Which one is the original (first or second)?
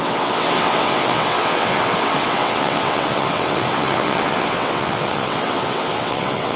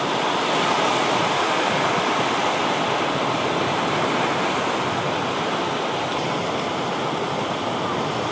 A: second